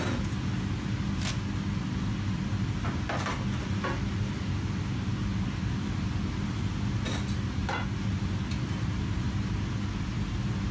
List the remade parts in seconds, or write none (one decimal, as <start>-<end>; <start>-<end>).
none